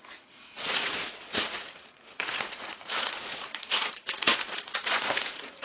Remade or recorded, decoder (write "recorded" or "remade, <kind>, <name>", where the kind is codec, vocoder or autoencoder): remade, vocoder, Vocos